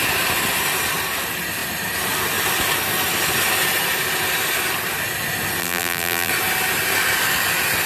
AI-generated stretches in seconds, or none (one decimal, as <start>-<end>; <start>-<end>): 5.6-6.3